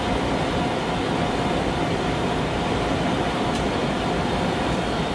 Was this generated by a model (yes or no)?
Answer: yes